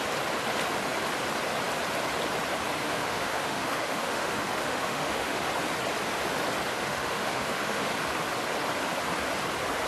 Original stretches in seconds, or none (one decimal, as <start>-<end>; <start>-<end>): 0.0-2.8; 5.5-6.7; 7.9-9.9